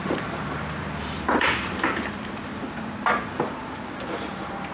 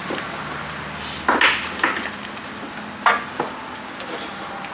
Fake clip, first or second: first